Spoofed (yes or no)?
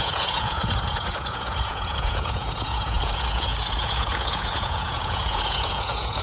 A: yes